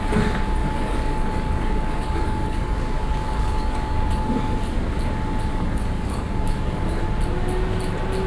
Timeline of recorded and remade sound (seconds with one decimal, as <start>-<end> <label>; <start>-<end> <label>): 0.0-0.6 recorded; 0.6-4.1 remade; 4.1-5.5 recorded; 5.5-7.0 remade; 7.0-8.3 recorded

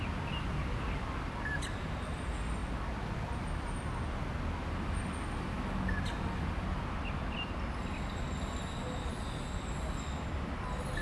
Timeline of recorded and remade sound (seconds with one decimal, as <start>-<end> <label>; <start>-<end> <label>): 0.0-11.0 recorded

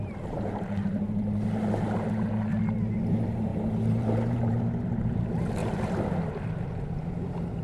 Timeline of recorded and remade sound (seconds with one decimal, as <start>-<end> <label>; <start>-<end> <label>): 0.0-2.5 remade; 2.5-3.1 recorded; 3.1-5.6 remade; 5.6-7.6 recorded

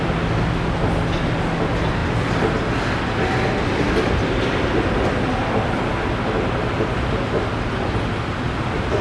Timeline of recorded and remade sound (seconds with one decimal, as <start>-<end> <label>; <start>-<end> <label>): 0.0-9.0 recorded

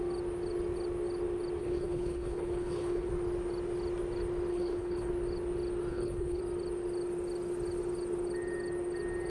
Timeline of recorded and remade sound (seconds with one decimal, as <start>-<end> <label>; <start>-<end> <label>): 0.0-1.6 recorded; 1.6-3.1 remade; 3.1-4.5 recorded; 4.5-5.1 remade; 5.1-5.9 recorded; 5.9-6.4 remade; 6.4-9.3 recorded